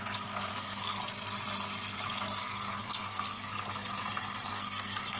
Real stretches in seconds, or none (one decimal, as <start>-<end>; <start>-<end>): 0.0-0.5; 1.0-2.4; 3.5-4.5